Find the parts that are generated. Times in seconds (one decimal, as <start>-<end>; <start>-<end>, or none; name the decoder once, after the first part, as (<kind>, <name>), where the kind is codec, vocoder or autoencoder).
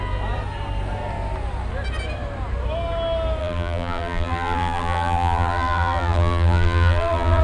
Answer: 3.4-7.4 (vocoder, BigVGAN v2)